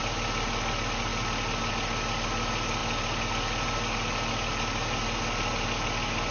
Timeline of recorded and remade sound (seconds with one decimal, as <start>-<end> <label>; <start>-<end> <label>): 0.0-6.3 recorded